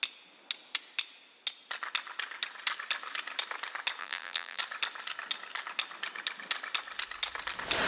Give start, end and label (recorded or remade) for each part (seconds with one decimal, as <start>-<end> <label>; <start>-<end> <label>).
0.0-4.0 recorded; 4.0-4.6 remade; 4.6-7.9 recorded